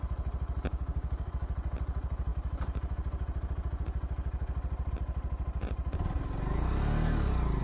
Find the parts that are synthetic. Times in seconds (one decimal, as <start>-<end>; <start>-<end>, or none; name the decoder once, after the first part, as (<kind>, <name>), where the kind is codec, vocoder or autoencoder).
0.7-1.3 (codec, DAC)